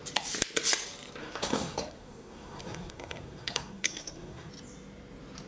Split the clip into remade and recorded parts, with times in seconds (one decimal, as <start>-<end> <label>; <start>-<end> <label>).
0.0-1.2 recorded; 1.2-4.5 remade; 4.5-5.5 recorded